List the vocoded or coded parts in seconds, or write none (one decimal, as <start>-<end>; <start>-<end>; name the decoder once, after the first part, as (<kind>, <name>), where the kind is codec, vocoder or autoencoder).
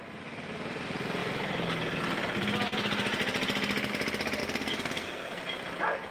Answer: 4.4-5.4 (codec, SNAC)